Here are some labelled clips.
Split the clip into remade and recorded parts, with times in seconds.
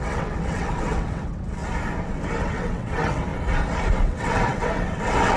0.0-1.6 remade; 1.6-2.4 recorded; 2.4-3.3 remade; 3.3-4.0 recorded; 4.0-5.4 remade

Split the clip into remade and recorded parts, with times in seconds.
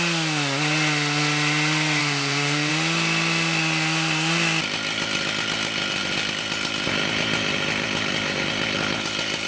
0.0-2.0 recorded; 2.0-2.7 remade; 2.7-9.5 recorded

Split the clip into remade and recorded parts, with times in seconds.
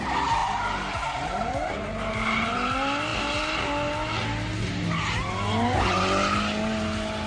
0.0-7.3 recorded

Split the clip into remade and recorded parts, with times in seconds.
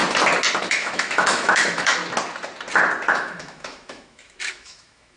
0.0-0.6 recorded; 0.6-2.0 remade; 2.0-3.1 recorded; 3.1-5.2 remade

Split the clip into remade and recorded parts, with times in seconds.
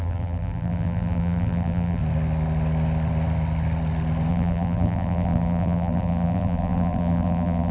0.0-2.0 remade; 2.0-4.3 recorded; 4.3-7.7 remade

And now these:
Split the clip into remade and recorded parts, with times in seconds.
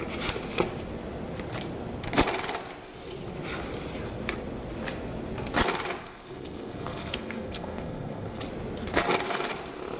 0.0-6.0 recorded; 6.0-8.4 remade; 8.4-10.0 recorded